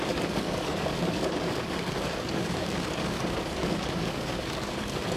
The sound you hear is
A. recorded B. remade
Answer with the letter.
B